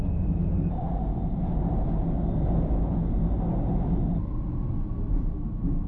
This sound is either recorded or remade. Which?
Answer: recorded